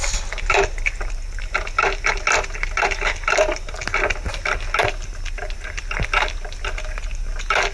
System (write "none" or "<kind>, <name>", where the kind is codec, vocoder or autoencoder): none